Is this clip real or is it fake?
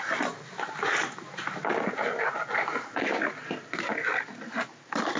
real